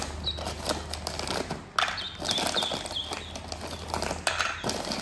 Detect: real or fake real